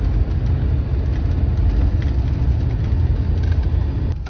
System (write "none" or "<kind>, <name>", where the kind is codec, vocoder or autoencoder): none